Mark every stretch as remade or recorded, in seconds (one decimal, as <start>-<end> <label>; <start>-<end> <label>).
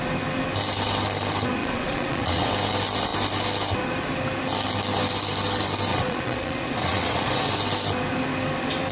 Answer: 0.0-1.6 recorded; 1.6-2.5 remade; 2.5-5.9 recorded; 5.9-7.5 remade; 7.5-8.9 recorded